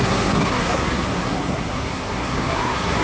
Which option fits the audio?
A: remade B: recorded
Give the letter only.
A